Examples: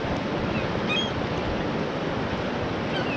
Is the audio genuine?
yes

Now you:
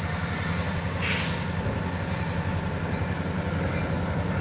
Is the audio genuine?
yes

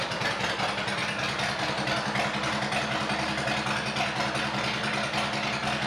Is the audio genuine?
yes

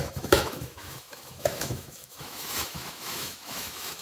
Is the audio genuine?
no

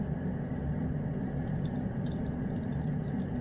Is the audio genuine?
no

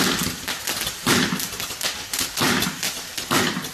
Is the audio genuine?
yes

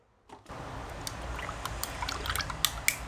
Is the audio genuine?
yes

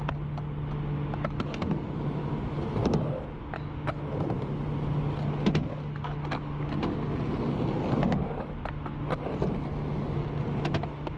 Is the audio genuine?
yes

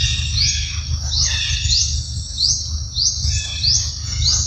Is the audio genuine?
yes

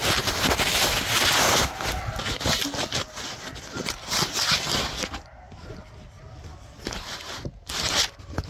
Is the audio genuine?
yes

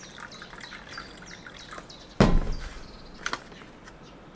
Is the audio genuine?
yes